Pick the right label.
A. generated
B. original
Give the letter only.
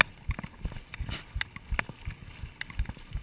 B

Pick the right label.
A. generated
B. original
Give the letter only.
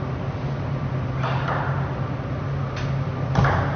B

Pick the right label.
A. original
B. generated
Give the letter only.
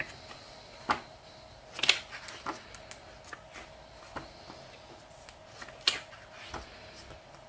A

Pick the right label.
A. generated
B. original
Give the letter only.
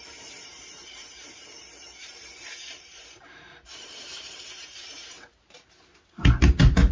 A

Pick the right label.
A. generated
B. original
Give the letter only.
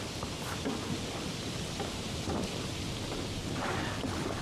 B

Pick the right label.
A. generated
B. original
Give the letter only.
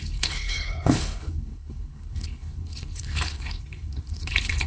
A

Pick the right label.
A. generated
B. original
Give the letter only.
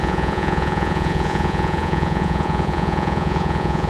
A